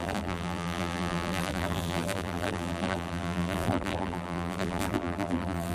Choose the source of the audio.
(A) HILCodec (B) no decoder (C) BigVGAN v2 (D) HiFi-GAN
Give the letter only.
C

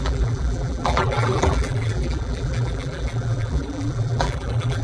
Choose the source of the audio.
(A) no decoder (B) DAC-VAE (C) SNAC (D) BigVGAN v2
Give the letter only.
D